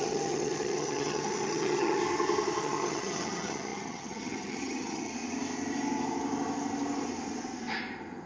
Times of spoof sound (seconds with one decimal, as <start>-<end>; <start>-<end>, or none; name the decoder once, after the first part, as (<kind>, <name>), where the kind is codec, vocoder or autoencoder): 0.0-2.0 (vocoder, HiFi-GAN); 2.6-5.1